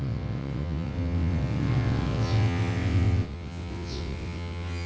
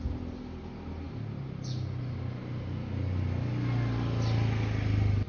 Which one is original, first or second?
second